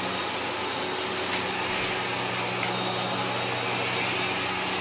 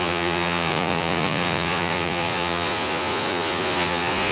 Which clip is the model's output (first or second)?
second